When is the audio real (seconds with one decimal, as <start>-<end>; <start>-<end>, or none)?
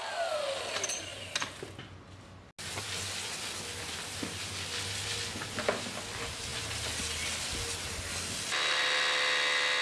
0.0-9.8